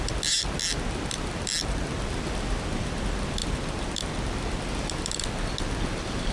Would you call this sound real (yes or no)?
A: yes